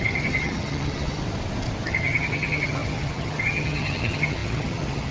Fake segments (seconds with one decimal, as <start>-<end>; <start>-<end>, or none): 0.0-1.2; 1.9-5.1